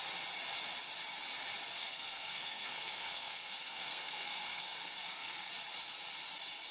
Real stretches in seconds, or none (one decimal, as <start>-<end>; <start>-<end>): 0.0-1.8; 5.5-6.7